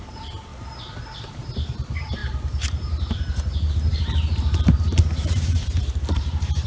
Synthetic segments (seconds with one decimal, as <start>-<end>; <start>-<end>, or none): 0.0-0.5; 1.3-6.7